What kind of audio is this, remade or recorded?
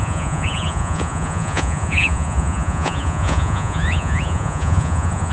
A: remade